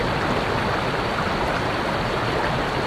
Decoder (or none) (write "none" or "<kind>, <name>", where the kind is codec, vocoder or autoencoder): none